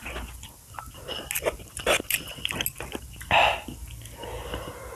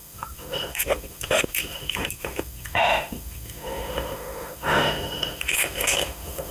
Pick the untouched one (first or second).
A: first